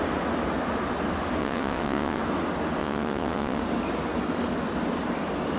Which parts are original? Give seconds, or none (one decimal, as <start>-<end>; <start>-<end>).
0.0-1.4; 2.2-2.8; 3.6-5.6